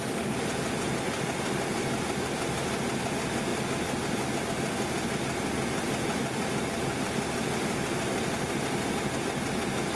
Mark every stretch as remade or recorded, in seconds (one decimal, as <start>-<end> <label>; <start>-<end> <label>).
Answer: 0.0-10.0 recorded

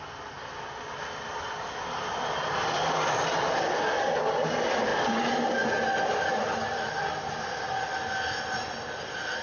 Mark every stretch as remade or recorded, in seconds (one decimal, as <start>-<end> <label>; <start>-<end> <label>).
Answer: 0.0-9.4 recorded

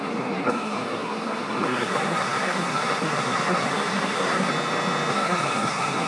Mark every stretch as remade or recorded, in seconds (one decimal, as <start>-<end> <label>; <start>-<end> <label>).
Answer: 0.0-4.5 remade; 4.5-5.1 recorded; 5.1-6.1 remade

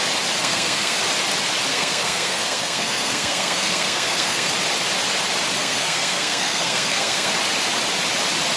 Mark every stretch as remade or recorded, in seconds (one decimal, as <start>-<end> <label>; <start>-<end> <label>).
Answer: 0.0-0.4 recorded; 0.4-1.0 remade; 1.0-1.7 recorded; 1.7-4.5 remade; 4.5-5.6 recorded; 5.6-7.3 remade; 7.3-8.6 recorded

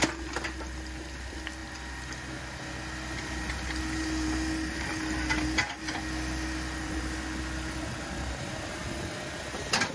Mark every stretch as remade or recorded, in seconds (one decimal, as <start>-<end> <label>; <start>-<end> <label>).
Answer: 0.0-9.9 recorded

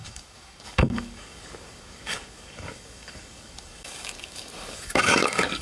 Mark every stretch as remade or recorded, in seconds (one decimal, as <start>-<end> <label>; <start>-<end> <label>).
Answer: 0.0-5.6 remade